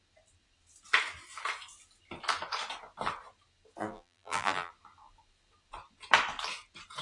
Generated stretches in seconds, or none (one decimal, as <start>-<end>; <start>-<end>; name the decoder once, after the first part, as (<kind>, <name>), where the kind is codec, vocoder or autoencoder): 3.8-4.7 (vocoder, BigVGAN v2)